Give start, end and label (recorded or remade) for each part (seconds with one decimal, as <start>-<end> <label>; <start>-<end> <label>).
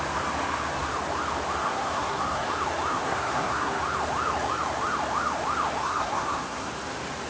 0.0-1.6 recorded; 1.6-2.5 remade; 2.5-2.9 recorded; 2.9-3.8 remade; 3.8-5.8 recorded; 5.8-6.7 remade; 6.7-7.3 recorded